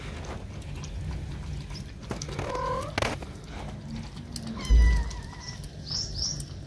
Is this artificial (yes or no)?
no